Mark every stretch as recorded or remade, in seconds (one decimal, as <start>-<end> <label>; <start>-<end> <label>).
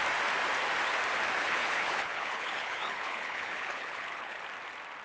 0.0-1.4 recorded; 1.4-4.4 remade; 4.4-5.0 recorded